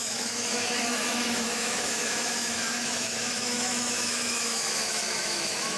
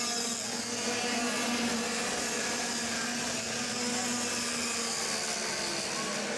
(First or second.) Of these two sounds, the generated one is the first